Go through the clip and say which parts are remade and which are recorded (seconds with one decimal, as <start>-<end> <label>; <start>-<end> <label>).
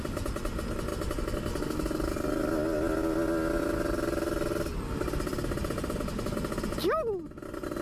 0.0-7.8 recorded